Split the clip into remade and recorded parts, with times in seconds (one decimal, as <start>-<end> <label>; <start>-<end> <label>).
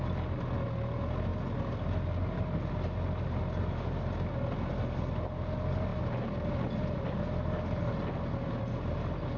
0.0-9.4 recorded